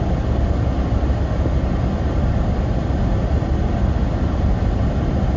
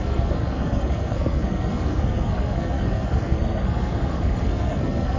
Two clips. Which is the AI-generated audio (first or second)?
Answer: second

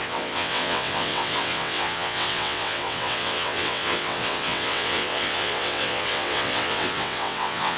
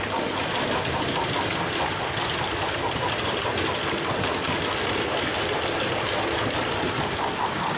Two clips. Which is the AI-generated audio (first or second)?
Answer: first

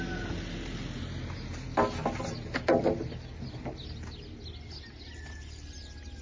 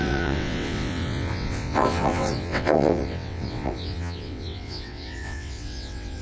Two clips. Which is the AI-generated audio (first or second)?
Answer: second